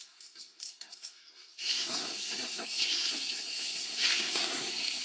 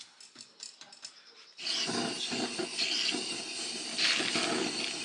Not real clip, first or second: first